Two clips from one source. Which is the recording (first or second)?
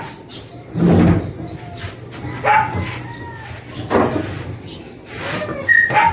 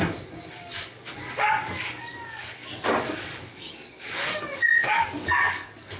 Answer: first